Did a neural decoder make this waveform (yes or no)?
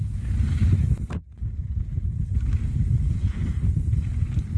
no